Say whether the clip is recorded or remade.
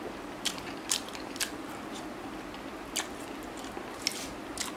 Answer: recorded